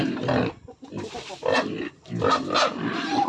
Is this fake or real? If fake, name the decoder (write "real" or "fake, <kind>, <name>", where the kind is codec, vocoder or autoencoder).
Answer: real